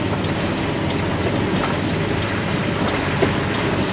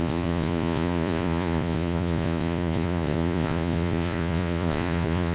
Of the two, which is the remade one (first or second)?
second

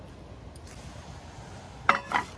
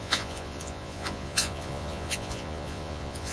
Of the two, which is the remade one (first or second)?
second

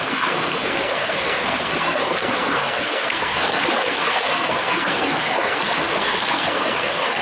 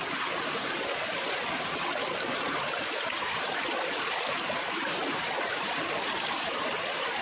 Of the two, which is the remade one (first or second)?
first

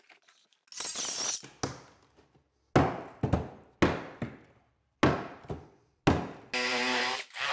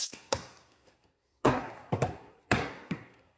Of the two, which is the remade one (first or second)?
second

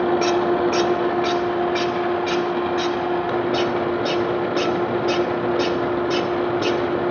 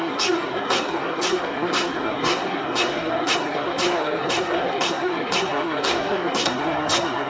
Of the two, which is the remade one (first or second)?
second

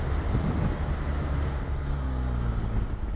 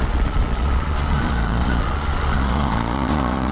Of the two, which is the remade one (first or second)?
second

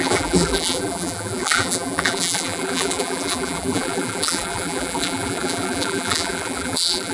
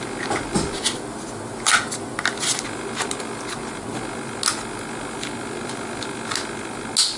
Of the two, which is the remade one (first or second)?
first